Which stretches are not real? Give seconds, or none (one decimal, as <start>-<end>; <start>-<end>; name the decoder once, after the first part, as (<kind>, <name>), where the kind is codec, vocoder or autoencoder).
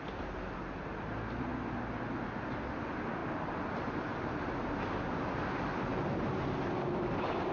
none